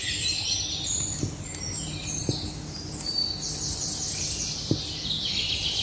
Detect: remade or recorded recorded